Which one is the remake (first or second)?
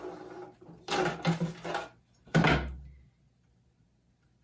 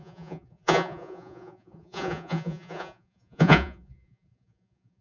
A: second